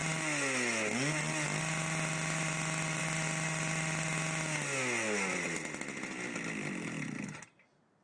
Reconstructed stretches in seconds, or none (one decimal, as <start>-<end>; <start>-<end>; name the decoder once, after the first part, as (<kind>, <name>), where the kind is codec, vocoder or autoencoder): none